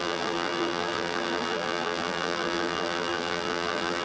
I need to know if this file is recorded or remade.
remade